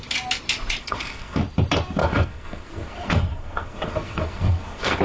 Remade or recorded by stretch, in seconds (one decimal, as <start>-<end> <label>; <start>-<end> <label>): 0.0-0.8 recorded; 0.8-1.4 remade; 1.4-2.0 recorded; 2.0-5.0 remade